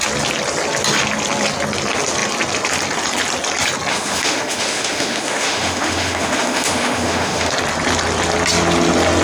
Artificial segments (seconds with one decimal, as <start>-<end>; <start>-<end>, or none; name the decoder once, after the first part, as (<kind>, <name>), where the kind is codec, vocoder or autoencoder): 3.9-7.5 (autoencoder, DAC-VAE)